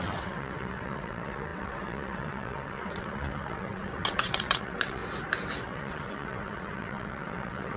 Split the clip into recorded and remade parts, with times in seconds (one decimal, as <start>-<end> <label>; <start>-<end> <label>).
0.0-5.0 remade; 5.0-5.6 recorded; 5.6-7.8 remade